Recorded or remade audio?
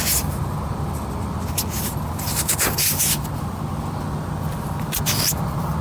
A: recorded